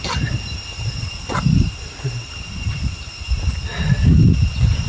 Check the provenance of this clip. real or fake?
real